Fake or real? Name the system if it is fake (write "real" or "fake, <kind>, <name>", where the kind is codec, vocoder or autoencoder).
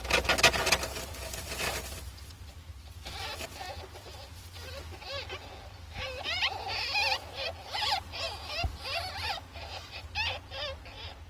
real